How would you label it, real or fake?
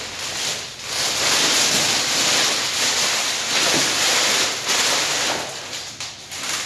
real